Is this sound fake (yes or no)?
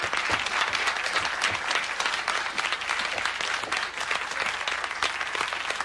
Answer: no